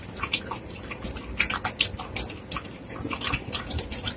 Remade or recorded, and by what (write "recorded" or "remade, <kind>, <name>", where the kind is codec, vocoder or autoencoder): recorded